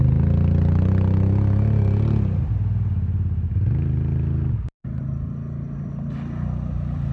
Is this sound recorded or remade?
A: recorded